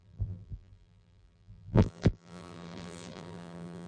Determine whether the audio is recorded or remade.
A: remade